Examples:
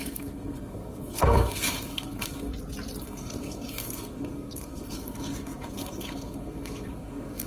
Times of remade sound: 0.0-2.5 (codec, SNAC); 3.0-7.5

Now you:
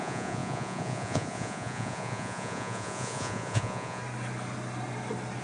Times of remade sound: 0.0-4.0 (vocoder, Vocos)

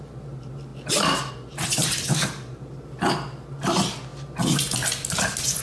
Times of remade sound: none

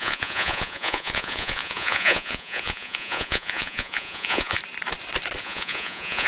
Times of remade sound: 0.0-4.6 (vocoder, Vocos); 5.4-6.3

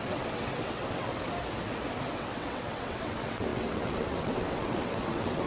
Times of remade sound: 0.0-1.1 (vocoder, WaveNeXt); 2.1-5.5

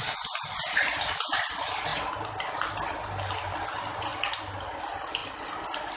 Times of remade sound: none

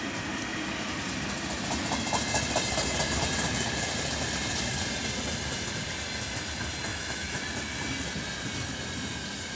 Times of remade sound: 6.9-7.4 (autoencoder, DAC-VAE)